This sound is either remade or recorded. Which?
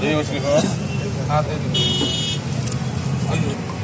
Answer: recorded